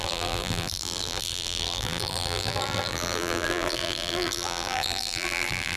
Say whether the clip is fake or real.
fake